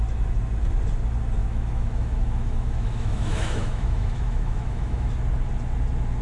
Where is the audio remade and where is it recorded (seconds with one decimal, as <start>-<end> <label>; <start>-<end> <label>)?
0.0-1.4 recorded; 1.4-5.1 remade; 5.1-6.2 recorded

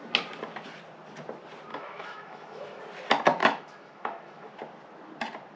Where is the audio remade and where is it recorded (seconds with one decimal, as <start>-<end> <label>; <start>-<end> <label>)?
0.0-1.7 recorded; 1.7-2.8 remade; 2.8-3.4 recorded; 3.4-4.5 remade; 4.5-5.6 recorded